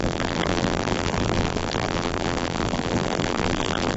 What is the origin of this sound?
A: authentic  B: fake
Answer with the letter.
B